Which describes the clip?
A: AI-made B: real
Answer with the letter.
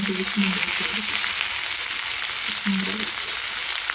B